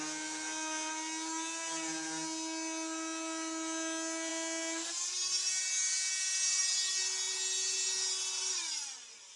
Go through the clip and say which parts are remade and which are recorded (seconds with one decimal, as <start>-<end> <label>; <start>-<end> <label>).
0.0-9.4 recorded